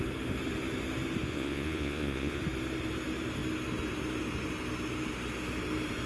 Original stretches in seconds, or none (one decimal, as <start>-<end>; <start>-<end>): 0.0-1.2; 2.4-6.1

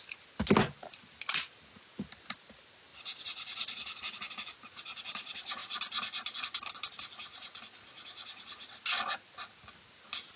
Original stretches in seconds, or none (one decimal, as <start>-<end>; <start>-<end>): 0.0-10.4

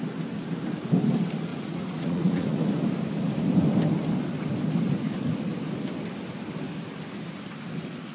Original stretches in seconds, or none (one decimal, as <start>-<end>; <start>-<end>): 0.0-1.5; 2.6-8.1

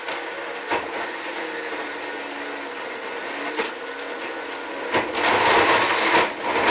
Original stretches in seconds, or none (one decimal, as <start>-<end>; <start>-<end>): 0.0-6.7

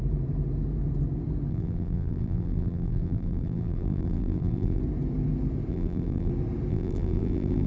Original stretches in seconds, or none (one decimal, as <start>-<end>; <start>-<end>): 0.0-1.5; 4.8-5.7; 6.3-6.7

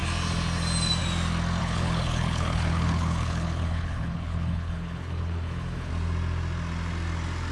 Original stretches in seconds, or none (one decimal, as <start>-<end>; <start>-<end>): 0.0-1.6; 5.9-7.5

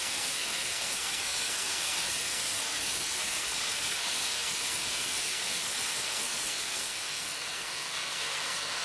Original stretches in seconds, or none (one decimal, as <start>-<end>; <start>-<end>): none

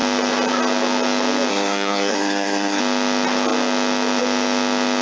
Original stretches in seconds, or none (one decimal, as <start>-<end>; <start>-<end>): 0.0-1.5; 2.8-5.0